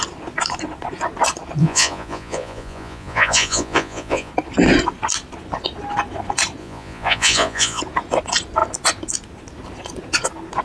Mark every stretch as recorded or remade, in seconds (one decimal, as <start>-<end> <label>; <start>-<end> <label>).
0.0-1.6 recorded; 1.6-4.3 remade; 4.3-6.6 recorded; 6.6-7.8 remade; 7.8-10.6 recorded